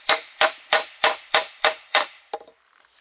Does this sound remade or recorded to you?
remade